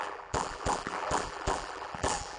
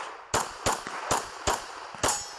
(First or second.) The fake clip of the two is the first